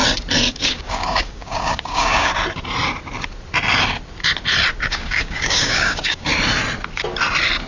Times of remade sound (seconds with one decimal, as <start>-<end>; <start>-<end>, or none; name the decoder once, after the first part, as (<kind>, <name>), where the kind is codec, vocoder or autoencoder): 0.5-2.3 (codec, DAC); 4.9-6.3